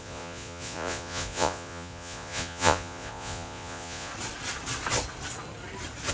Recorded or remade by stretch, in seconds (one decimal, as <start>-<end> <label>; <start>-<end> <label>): 0.0-4.1 remade; 4.1-6.1 recorded

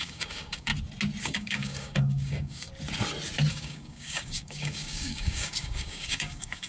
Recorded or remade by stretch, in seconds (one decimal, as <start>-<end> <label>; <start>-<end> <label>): 0.0-0.7 remade; 0.7-1.2 recorded; 1.2-2.7 remade; 2.7-3.5 recorded; 3.5-6.7 remade

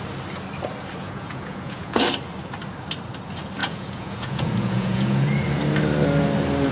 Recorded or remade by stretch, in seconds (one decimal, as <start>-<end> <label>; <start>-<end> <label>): 0.0-1.0 recorded; 1.0-2.0 remade; 2.0-3.6 recorded; 3.6-5.3 remade; 5.3-6.7 recorded

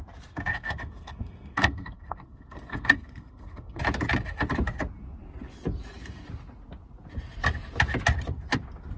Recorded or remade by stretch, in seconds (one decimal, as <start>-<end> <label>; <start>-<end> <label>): 0.0-0.5 recorded; 0.5-3.8 remade; 3.8-9.0 recorded

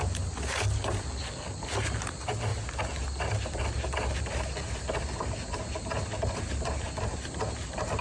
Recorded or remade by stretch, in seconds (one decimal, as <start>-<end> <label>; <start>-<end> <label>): 0.0-8.0 recorded

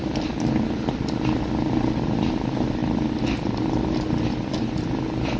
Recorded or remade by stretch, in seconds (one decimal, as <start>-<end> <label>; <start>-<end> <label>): 0.0-5.4 recorded